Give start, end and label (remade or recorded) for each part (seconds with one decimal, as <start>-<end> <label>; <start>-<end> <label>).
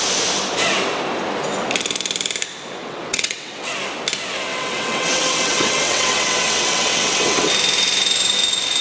0.0-2.8 recorded; 2.8-3.7 remade; 3.7-4.5 recorded; 4.5-7.5 remade; 7.5-8.8 recorded